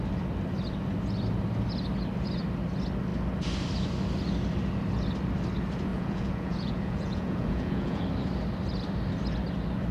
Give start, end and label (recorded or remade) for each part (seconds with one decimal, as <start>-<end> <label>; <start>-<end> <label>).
0.0-5.9 recorded; 5.9-8.0 remade; 8.0-9.9 recorded